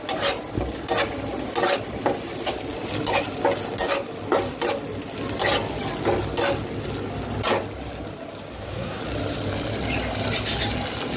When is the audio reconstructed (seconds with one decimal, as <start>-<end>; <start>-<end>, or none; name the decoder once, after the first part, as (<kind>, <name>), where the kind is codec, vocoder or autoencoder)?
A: 8.5-9.0 (codec, SNAC)